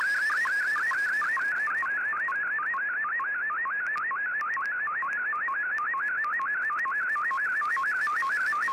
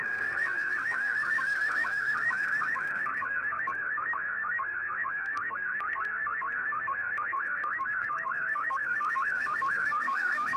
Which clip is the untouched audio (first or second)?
first